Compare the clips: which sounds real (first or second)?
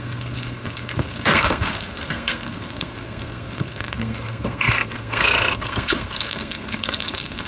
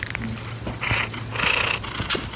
second